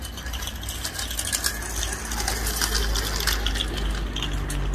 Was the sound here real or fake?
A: real